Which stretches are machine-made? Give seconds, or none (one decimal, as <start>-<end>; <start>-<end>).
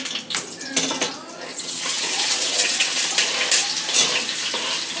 1.5-3.0